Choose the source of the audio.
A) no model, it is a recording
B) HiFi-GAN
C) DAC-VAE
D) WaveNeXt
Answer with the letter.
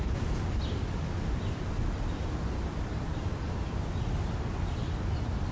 A